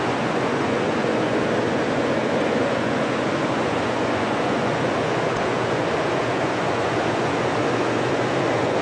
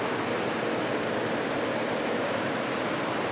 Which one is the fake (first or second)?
first